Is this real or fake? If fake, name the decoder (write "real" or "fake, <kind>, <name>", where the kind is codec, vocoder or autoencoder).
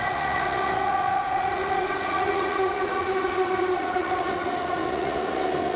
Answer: fake, vocoder, Vocos